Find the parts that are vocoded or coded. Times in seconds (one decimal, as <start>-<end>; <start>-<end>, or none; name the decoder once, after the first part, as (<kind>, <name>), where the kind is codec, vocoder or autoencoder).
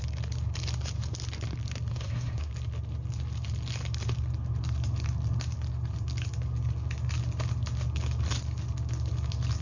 1.9-2.5 (codec, SNAC)